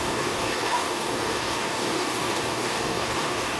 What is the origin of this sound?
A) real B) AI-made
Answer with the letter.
B